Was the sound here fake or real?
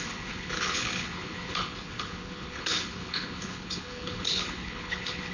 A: fake